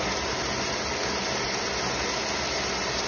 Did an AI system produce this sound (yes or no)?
no